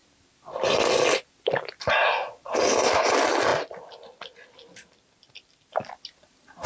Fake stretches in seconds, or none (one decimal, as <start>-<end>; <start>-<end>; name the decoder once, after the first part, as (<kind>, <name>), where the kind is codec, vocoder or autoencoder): none